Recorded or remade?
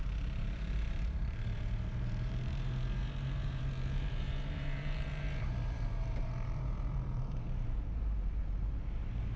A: remade